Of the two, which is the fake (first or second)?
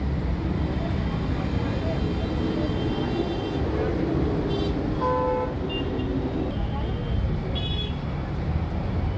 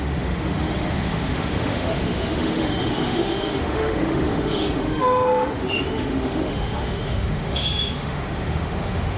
second